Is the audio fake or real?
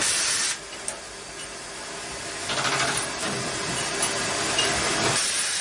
real